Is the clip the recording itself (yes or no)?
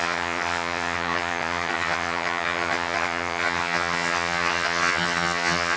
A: no